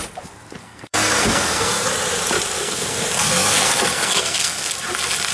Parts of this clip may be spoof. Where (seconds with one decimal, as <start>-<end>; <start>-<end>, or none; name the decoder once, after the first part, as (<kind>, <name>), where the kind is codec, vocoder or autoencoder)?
0.6-1.9 (codec, SNAC); 2.6-4.7